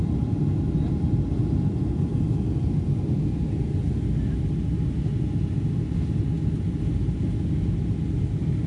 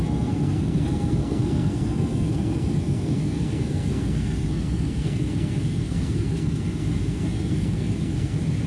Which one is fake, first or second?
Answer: second